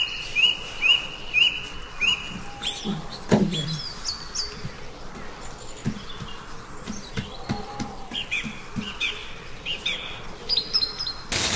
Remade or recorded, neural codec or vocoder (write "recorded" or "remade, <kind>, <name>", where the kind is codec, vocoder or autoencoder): recorded